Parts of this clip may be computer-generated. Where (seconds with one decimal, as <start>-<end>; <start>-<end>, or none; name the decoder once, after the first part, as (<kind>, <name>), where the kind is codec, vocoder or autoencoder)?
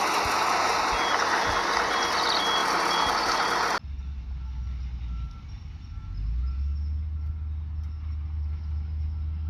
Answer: none